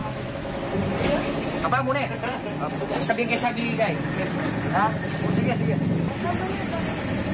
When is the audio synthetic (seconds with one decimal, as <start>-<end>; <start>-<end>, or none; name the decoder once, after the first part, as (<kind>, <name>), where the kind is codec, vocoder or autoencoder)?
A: 0.0-0.6 (autoencoder, DAC-VAE)